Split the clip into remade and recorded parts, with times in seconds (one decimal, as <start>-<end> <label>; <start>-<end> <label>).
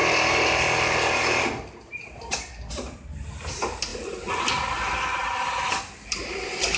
0.0-2.3 remade; 2.3-6.8 recorded